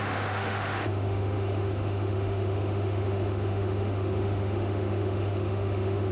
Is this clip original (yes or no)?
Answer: no